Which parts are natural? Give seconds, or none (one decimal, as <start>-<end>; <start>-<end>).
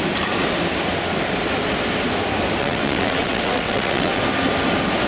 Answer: 0.0-2.6; 4.2-5.1